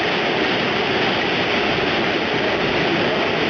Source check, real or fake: real